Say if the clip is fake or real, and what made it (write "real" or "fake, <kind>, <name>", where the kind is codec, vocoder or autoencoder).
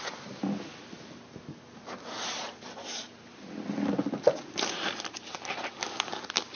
real